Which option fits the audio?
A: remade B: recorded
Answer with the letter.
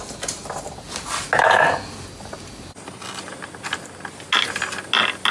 B